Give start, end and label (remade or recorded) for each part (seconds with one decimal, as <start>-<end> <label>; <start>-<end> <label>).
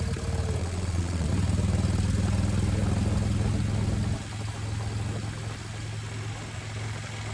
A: 0.0-0.6 recorded; 0.6-1.3 remade; 1.3-7.3 recorded